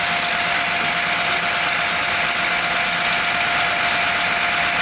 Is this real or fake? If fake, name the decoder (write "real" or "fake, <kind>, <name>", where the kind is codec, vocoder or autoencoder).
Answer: real